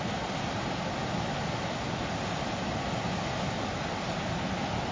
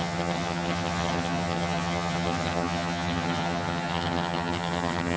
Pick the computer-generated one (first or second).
second